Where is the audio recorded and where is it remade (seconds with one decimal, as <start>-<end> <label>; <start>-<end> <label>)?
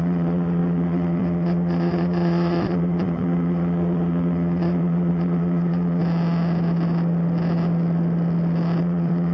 0.0-6.0 remade; 6.0-8.8 recorded; 8.8-9.3 remade